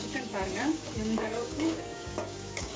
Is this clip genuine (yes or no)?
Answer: no